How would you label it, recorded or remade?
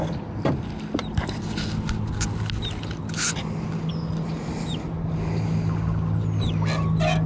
recorded